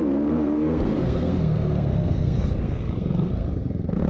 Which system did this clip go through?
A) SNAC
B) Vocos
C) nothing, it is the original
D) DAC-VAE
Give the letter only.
A